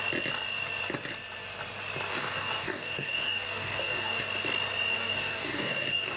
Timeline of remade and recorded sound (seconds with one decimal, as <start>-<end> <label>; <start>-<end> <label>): 0.0-2.1 recorded; 2.1-4.2 remade; 4.2-4.9 recorded; 4.9-6.2 remade